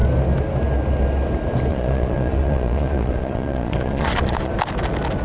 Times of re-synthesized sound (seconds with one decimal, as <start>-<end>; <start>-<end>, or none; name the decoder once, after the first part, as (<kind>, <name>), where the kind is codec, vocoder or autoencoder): 1.7-4.5 (vocoder, Vocos)